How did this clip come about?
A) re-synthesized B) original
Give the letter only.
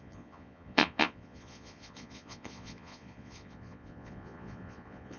A